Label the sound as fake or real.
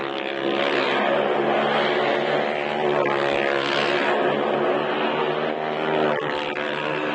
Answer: real